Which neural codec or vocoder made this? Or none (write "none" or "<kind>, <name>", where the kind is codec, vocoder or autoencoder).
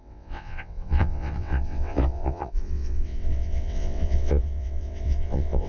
vocoder, WaveNeXt